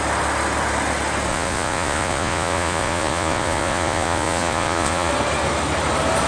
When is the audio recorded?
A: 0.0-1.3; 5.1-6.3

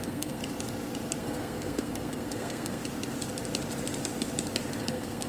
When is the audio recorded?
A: 0.4-1.2; 2.8-4.8

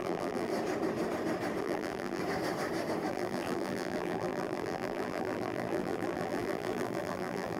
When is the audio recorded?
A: 0.5-1.6; 2.2-3.1